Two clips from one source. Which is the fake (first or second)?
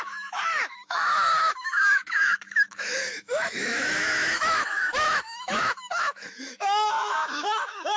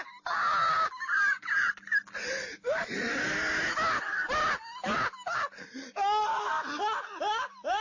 first